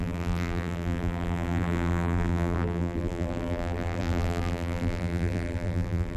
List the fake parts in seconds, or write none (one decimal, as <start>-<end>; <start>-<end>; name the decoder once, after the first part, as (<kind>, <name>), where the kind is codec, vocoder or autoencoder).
0.0-6.2 (vocoder, BigVGAN v2)